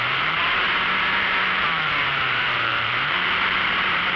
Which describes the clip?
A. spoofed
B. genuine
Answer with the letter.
A